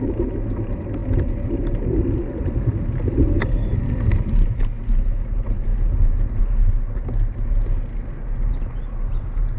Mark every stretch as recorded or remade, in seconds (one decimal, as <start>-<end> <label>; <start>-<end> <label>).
0.0-9.6 recorded